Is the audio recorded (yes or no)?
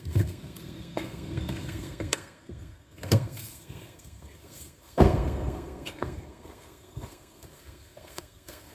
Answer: no